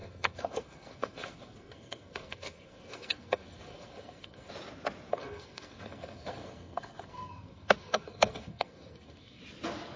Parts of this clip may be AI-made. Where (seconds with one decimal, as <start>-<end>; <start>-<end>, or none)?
0.0-4.5; 5.1-9.4